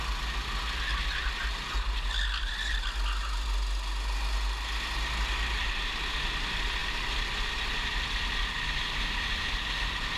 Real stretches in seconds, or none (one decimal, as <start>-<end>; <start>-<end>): 0.0-10.2